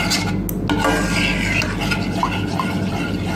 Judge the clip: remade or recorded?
recorded